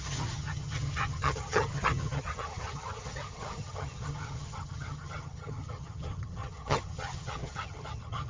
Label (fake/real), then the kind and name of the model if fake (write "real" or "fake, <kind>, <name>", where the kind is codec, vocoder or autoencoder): fake, vocoder, HiFi-GAN